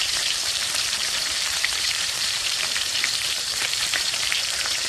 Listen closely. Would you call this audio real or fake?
fake